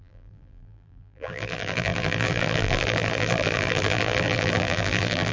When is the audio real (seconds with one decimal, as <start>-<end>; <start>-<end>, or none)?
none

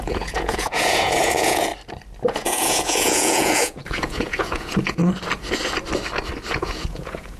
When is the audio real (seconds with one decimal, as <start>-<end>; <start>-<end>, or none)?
1.7-2.3; 5.0-6.5

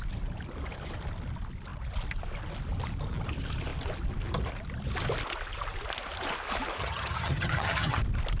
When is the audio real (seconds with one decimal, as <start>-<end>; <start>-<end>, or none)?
0.0-6.8; 8.0-8.4

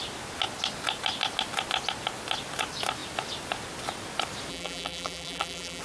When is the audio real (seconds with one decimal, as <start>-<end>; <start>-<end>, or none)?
0.0-4.5

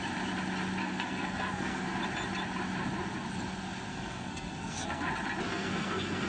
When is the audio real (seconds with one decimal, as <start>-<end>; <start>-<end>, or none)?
0.0-0.8; 2.0-3.9; 5.1-5.5

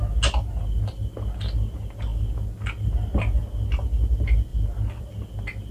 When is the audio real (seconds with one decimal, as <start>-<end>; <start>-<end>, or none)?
0.0-5.7

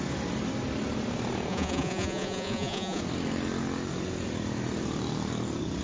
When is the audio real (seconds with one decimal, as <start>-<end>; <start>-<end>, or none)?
0.0-1.5; 3.0-5.8